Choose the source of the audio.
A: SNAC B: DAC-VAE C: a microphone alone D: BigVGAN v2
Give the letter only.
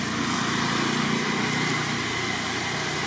C